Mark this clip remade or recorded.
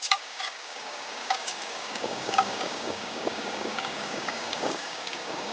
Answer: remade